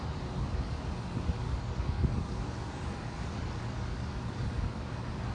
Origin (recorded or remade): remade